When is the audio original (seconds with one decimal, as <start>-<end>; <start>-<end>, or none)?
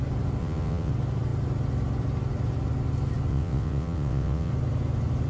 0.0-0.4; 0.9-3.3; 4.5-5.3